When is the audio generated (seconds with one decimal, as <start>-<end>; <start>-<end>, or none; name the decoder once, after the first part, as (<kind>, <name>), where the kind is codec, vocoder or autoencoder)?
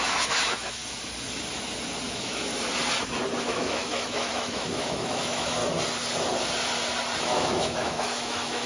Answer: 0.0-0.8 (autoencoder, DAC-VAE); 2.1-2.5; 3.4-5.6; 7.2-8.7